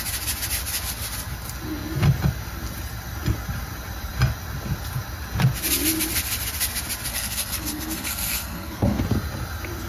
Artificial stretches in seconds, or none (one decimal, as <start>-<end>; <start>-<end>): 7.1-9.0